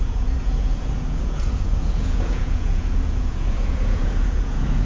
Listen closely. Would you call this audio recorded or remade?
remade